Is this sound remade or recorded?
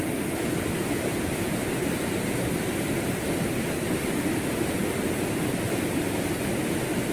remade